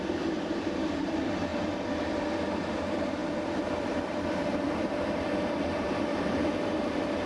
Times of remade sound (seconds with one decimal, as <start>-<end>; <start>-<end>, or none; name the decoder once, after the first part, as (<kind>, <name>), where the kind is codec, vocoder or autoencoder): 0.0-1.5 (vocoder, BigVGAN v2); 2.6-7.3